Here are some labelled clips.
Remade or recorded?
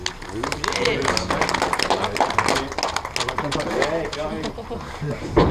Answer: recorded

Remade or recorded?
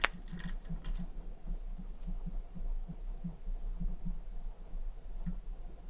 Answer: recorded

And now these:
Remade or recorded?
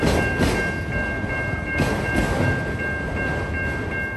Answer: recorded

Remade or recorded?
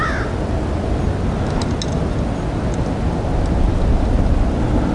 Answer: recorded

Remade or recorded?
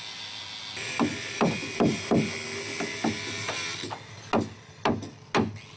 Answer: recorded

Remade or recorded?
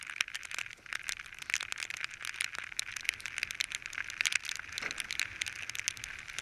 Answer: recorded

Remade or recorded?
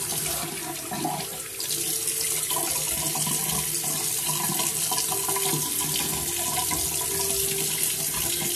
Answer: recorded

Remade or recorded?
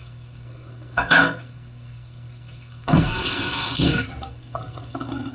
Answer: remade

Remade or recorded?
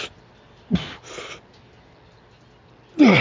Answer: recorded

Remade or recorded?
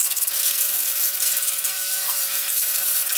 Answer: remade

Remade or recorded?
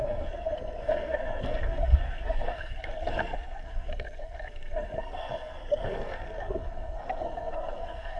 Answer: remade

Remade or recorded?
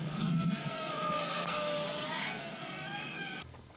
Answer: remade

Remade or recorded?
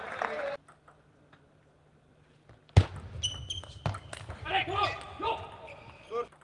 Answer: recorded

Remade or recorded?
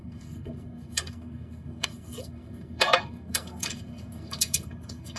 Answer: remade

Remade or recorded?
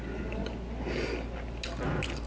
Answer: recorded